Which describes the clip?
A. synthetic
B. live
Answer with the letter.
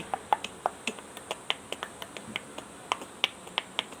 B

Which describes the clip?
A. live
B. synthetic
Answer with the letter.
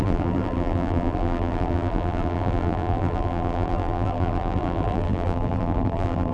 B